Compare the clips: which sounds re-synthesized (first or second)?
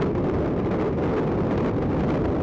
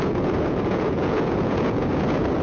second